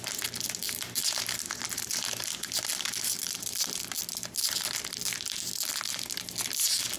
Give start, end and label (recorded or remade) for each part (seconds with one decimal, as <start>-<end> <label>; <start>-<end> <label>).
0.0-7.0 recorded

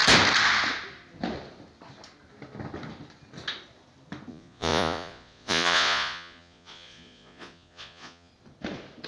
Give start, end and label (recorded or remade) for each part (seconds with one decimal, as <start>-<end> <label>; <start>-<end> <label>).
0.0-4.3 recorded; 4.3-8.3 remade; 8.3-9.1 recorded

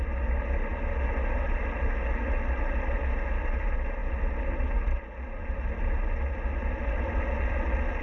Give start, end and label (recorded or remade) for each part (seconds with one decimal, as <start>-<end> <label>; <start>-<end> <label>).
0.0-8.0 recorded